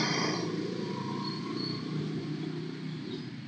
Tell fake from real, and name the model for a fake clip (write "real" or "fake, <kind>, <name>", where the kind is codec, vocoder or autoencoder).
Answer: fake, vocoder, BigVGAN v2